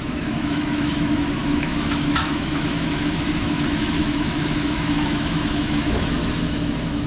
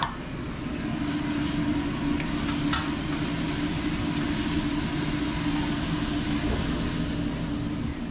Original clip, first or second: second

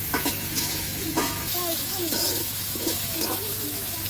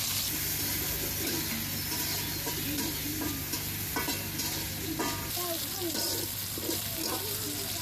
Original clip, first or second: second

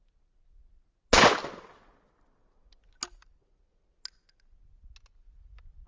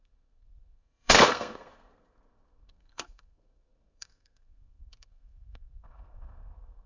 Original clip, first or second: first